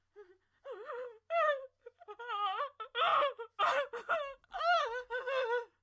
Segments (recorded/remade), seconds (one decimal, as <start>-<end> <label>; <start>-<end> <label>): 0.0-5.8 recorded